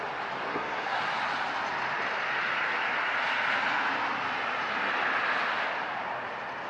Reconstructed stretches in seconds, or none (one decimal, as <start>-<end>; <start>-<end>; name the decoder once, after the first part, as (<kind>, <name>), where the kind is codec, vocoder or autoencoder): 0.5-1.1 (codec, SNAC)